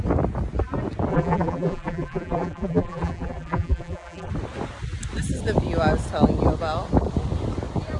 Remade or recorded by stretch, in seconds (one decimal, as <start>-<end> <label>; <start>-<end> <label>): 0.0-1.1 recorded; 1.1-4.3 remade; 4.3-8.0 recorded